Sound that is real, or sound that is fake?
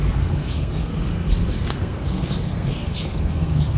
fake